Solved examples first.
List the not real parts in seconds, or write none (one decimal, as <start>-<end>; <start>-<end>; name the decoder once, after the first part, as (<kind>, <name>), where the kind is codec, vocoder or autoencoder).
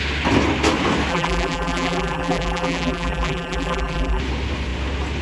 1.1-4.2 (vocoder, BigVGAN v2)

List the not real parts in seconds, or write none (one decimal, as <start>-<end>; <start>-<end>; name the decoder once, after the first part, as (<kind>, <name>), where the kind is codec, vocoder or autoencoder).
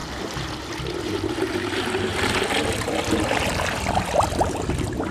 none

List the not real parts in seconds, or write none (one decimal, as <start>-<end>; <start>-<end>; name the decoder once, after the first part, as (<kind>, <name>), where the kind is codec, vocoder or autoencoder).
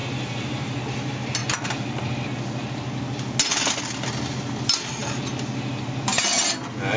0.0-0.8 (vocoder, BigVGAN v2)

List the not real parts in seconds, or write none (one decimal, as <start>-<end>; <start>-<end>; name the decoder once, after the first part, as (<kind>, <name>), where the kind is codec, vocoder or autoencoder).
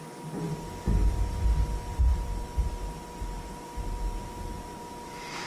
0.0-5.5 (vocoder, BigVGAN v2)